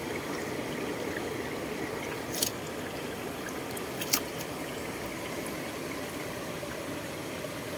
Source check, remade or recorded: recorded